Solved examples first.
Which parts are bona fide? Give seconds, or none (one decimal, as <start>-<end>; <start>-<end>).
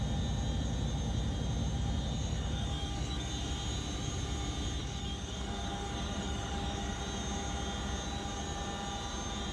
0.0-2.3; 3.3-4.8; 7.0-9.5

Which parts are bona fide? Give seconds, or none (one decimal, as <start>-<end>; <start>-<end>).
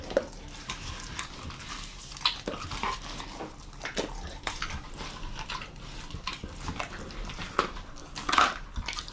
0.0-8.0; 8.5-9.1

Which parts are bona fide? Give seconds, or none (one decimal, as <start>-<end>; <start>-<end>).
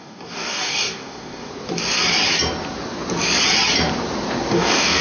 1.5-4.5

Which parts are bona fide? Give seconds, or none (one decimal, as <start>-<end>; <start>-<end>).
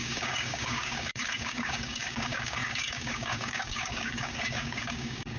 none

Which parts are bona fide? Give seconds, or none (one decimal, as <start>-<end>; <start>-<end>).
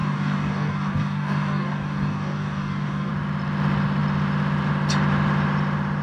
3.1-6.0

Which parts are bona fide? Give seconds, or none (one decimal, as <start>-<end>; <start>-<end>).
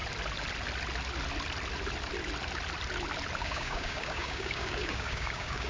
0.0-3.4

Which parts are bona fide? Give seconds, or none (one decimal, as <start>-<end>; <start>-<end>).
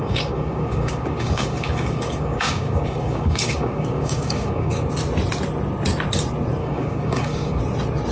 4.9-6.6; 7.6-8.1